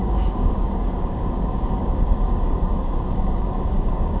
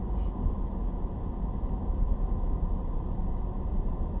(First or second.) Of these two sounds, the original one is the second